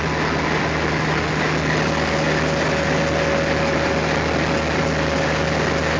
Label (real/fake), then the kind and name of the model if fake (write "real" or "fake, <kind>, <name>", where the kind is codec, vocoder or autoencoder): real